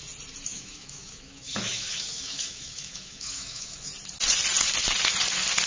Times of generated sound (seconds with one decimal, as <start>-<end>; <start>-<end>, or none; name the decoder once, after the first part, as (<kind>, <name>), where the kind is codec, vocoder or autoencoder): 0.5-3.9 (autoencoder, DAC-VAE)